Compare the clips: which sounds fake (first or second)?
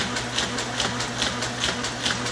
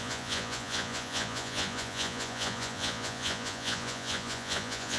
second